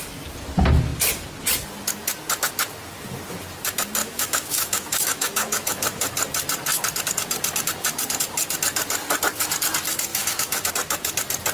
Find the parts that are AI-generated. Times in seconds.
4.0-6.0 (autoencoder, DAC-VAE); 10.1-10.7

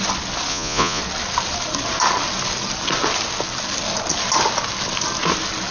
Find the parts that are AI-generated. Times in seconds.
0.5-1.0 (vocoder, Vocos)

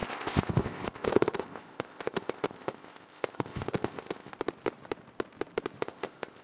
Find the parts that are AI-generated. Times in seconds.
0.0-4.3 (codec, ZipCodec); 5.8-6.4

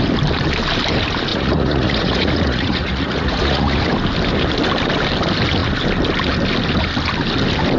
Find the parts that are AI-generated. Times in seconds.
1.3-3.8 (vocoder, Vocos)

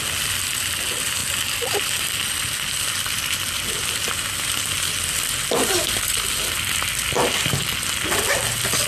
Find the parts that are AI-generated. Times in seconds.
none

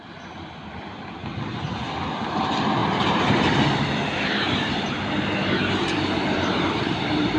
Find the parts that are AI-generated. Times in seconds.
2.8-7.4 (vocoder, BigVGAN v2)